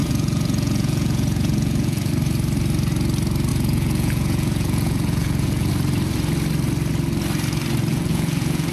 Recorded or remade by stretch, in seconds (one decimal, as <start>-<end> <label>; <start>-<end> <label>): 0.0-2.1 remade; 2.1-3.5 recorded; 3.5-5.7 remade; 5.7-7.9 recorded; 7.9-8.7 remade